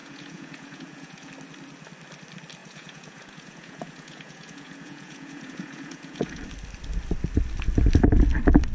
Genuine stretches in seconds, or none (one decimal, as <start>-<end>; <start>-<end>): 1.3-2.6; 6.4-8.7